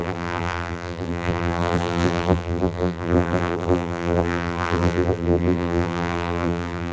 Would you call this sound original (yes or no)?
no